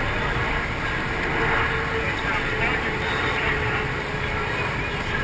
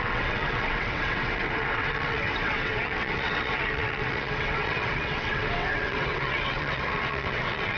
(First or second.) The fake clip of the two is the second